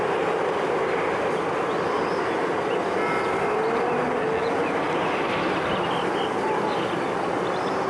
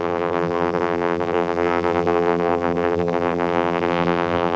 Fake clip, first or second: second